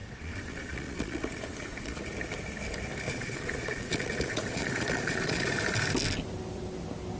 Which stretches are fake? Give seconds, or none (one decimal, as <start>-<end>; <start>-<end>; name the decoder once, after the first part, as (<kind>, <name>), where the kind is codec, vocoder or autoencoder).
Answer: 0.0-2.0 (vocoder, Vocos); 3.1-5.5